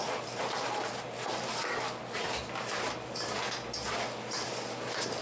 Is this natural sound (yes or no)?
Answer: yes